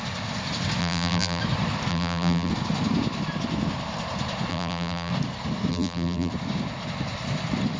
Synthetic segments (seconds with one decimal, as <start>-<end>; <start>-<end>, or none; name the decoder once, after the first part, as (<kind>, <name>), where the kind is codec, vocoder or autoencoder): 0.8-1.4 (vocoder, BigVGAN v2); 1.9-2.5; 4.5-5.1; 5.7-6.3